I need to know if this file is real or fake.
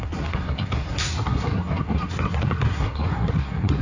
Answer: fake